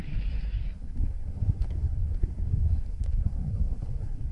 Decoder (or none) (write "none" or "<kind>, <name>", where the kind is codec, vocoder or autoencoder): codec, SNAC